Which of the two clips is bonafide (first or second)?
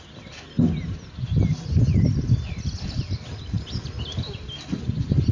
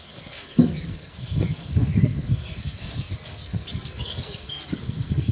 first